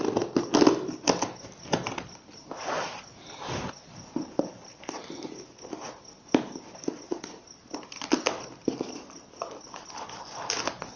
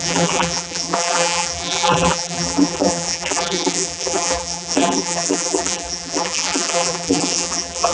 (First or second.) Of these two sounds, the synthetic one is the second